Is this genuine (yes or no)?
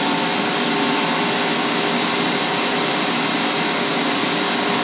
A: yes